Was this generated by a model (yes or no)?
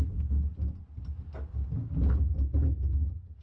no